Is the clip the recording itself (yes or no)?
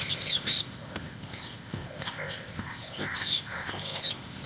no